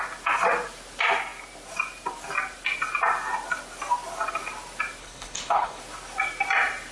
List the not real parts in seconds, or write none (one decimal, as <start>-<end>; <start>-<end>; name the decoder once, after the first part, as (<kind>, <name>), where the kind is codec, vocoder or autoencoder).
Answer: 5.0-5.8 (codec, HILCodec)